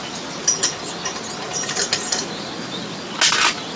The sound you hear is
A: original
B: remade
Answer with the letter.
A